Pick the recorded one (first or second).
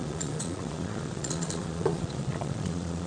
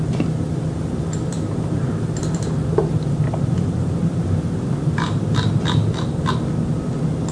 second